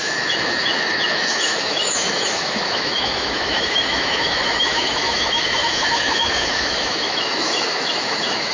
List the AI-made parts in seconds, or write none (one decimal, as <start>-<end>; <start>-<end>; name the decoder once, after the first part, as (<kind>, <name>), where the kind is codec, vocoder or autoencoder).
0.0-8.5 (autoencoder, DAC-VAE)